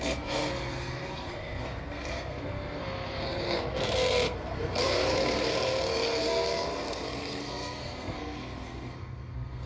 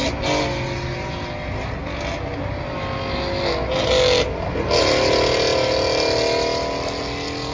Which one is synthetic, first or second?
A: first